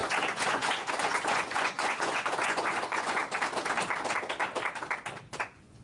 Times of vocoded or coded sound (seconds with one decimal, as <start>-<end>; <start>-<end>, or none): 0.0-3.2; 5.2-5.8